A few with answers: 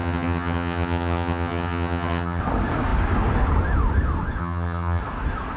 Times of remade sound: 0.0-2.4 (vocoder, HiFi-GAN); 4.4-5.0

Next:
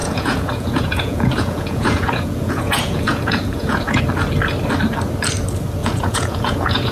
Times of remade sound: 0.0-4.0 (vocoder, Vocos); 5.8-6.9